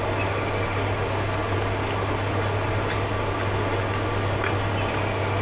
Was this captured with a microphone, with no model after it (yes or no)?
yes